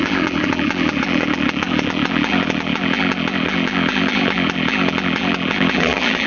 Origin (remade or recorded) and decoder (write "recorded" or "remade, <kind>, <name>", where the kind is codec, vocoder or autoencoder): remade, vocoder, BigVGAN v2